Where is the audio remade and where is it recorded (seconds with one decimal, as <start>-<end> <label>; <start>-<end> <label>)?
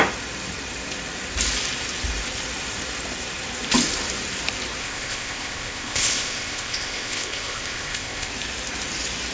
0.0-4.8 recorded; 4.8-8.3 remade; 8.3-9.3 recorded